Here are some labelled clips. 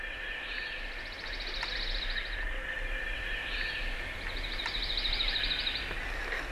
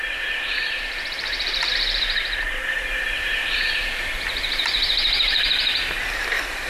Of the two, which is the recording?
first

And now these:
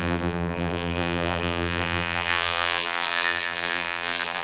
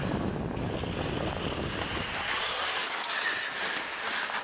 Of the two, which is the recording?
second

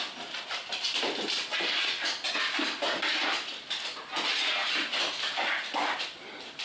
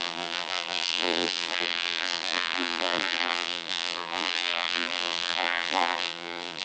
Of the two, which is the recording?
first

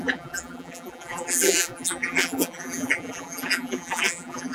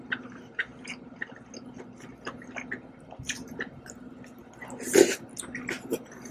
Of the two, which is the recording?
second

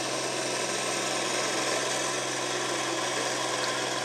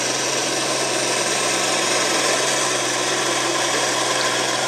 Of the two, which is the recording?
first